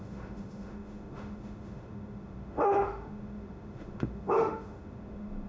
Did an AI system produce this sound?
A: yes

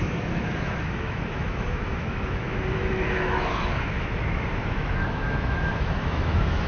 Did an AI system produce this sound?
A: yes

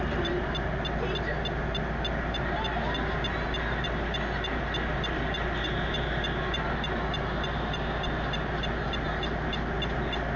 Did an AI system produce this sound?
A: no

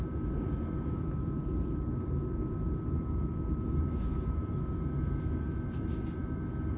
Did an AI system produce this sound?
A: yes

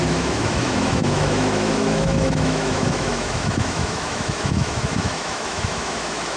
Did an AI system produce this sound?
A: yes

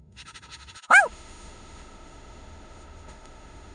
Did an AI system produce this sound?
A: yes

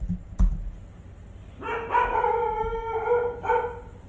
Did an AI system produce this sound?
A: no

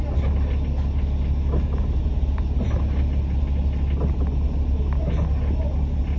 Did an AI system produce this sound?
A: no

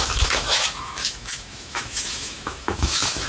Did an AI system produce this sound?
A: yes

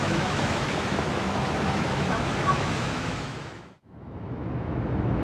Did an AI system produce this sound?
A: yes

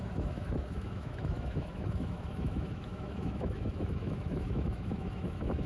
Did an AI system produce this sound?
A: yes